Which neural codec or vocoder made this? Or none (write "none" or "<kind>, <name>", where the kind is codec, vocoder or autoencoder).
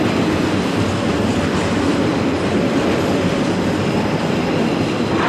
vocoder, BigVGAN v2